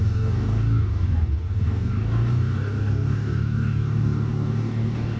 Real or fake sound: fake